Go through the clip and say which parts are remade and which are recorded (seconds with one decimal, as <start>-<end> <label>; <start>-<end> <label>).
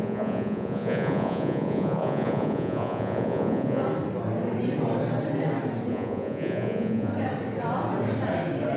0.0-3.8 remade; 3.8-5.9 recorded; 5.9-7.1 remade; 7.1-8.8 recorded